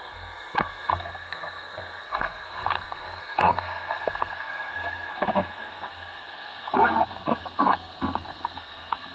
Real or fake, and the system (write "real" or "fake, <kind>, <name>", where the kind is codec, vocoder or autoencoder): fake, codec, SNAC